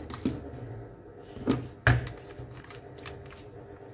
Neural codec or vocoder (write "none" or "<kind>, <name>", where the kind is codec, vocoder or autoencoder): none